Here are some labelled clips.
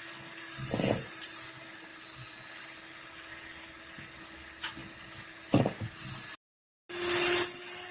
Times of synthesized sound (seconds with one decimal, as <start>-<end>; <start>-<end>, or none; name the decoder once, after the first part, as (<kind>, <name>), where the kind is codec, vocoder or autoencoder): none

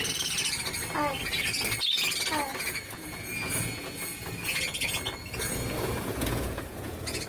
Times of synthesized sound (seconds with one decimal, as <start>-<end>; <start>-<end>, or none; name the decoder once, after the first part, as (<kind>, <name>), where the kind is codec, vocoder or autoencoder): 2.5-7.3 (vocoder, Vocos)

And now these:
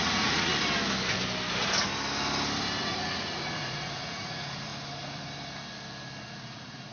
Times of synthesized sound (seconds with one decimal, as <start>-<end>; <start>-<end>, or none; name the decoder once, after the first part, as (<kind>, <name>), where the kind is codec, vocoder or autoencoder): 0.0-0.5 (vocoder, Vocos); 2.8-4.7; 6.3-6.9

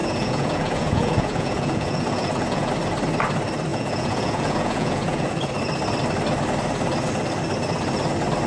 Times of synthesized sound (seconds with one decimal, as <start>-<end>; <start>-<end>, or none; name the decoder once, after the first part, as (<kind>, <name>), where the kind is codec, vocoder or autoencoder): 0.0-2.7 (vocoder, Vocos); 3.7-5.5